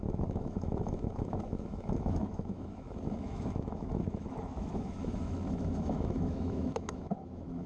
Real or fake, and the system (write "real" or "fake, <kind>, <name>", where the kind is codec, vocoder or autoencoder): fake, autoencoder, DAC-VAE